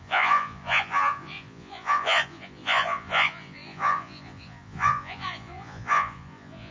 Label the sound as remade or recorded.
remade